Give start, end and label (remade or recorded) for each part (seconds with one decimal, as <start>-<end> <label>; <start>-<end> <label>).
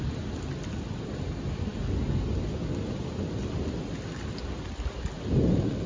0.0-5.9 recorded